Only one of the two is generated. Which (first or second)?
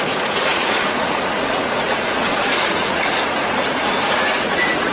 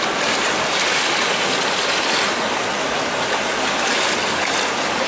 first